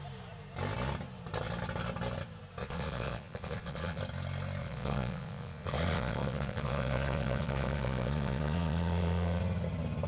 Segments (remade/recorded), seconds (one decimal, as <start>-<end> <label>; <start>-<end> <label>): 0.0-2.6 recorded; 2.6-4.0 remade; 4.0-4.6 recorded; 4.6-9.4 remade; 9.4-10.1 recorded

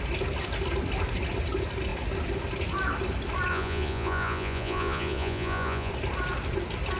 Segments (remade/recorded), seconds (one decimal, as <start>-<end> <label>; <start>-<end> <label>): 0.0-3.5 recorded; 3.5-5.9 remade; 5.9-7.0 recorded

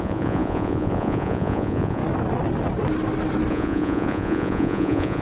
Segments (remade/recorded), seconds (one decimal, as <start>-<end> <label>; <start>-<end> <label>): 0.0-2.0 remade; 2.0-3.5 recorded; 3.5-5.2 remade